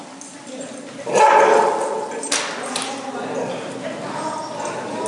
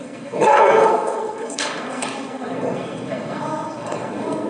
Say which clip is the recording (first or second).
first